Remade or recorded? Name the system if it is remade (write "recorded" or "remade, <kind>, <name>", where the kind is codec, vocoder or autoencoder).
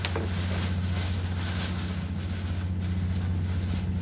recorded